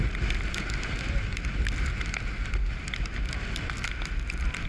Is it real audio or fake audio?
real